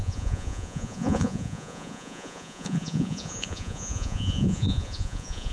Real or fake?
fake